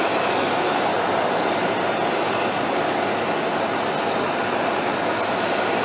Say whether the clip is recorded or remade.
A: recorded